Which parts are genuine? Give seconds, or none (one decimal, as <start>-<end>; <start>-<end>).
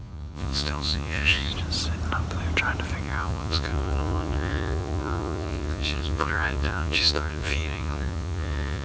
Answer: 1.5-3.0